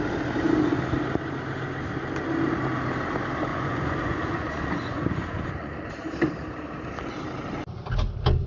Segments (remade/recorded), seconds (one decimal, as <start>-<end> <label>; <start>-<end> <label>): 0.0-3.5 recorded; 3.5-5.7 remade; 5.7-8.5 recorded